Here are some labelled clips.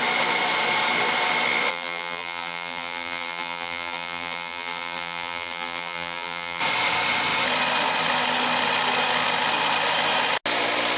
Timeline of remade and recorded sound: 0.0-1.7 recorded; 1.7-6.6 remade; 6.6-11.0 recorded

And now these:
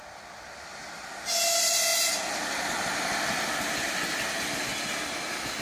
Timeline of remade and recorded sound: 0.0-5.6 recorded